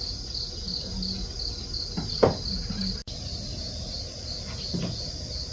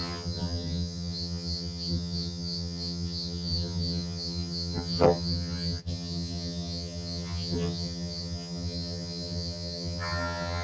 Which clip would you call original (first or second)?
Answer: first